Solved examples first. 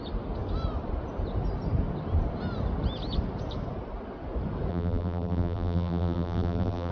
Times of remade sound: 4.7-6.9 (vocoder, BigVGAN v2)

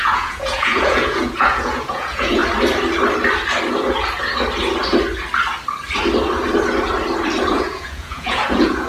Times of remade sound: 0.0-2.4 (vocoder, Vocos); 7.5-8.9

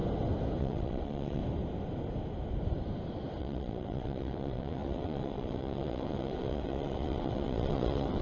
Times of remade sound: 0.6-1.4 (vocoder, WaveNeXt); 3.4-8.2

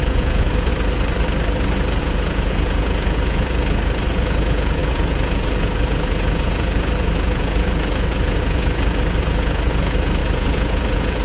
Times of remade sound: 0.0-0.7 (vocoder, Vocos); 2.0-11.2

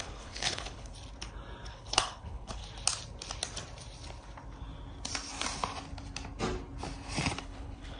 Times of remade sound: 0.0-0.9 (codec, HILCodec); 1.7-2.6; 7.4-8.0

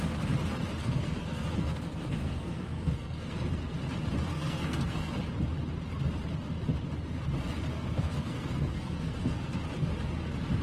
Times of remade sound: 0.8-3.8 (codec, SNAC); 4.3-5.1; 7.7-9.6

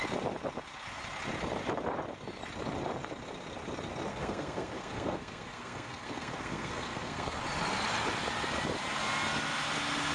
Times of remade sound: 4.1-7.4 (codec, SNAC)